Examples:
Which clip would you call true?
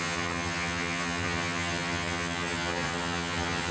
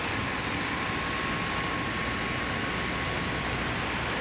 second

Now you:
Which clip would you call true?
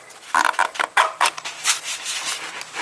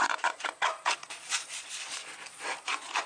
first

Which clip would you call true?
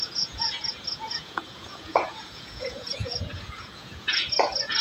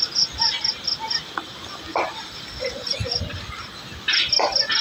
second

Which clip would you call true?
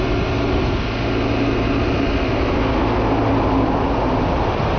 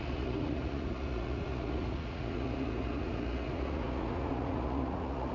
first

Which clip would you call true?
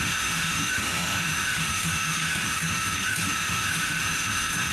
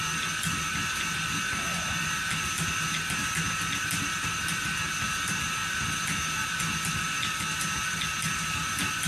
second